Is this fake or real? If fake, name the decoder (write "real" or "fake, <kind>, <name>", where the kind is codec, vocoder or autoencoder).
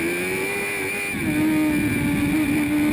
real